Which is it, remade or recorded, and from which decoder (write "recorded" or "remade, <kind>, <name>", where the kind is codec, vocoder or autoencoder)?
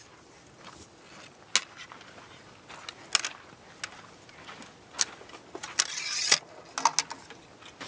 recorded